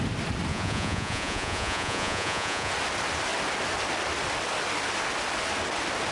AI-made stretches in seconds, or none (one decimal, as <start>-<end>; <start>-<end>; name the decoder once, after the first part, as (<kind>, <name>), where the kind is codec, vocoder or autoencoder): 0.5-2.7 (vocoder, Vocos)